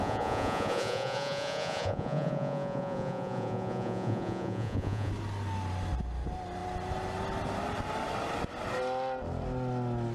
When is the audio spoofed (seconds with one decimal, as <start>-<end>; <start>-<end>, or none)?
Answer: 0.0-5.1